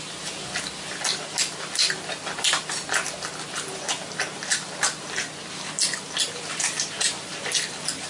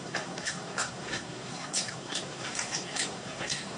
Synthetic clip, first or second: second